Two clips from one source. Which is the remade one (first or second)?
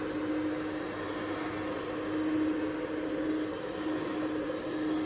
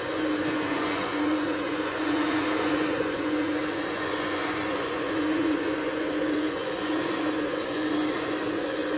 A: second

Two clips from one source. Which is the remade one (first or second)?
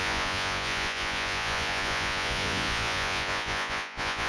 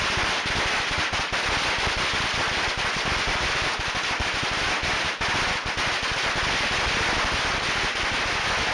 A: first